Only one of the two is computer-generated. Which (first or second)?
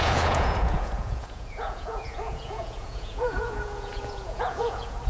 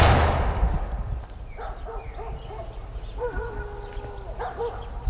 first